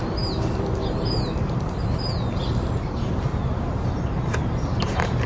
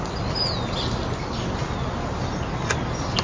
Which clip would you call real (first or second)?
second